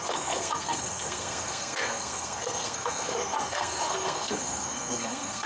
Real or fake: fake